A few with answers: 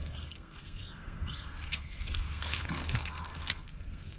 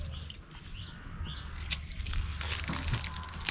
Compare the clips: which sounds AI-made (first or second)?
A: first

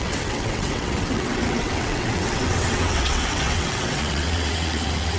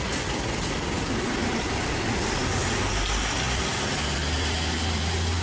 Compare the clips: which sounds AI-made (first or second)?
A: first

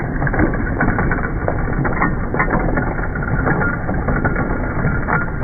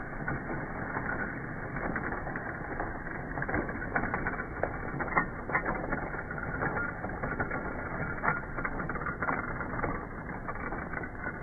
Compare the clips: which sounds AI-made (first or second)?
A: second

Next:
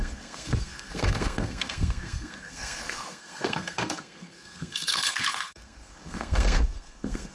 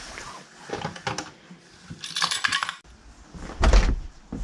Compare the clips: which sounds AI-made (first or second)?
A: first